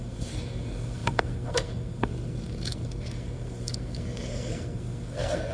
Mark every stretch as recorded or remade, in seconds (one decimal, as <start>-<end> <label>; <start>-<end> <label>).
0.0-5.5 remade